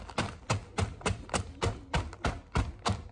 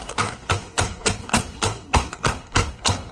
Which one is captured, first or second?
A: first